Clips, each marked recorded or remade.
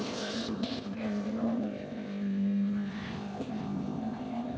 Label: remade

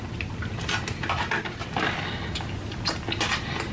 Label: recorded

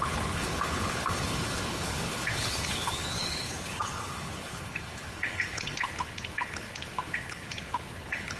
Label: remade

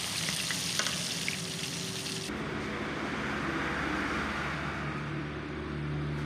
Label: recorded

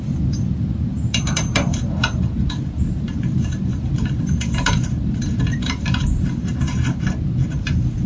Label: remade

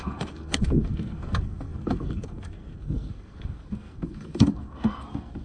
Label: remade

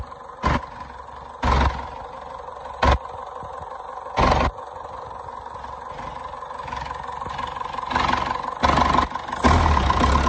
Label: recorded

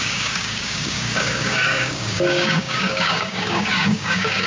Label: remade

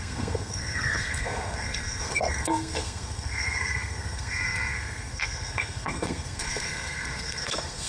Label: remade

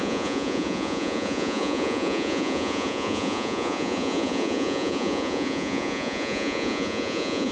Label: remade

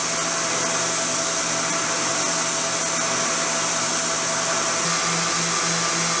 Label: recorded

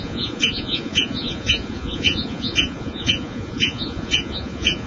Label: remade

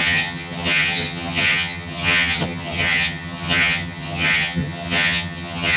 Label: remade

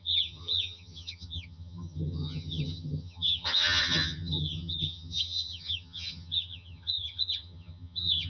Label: remade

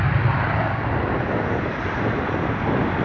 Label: recorded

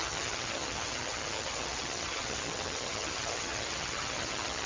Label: remade